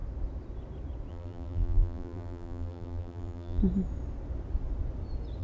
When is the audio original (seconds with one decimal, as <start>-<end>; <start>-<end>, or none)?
0.0-1.1; 3.6-5.4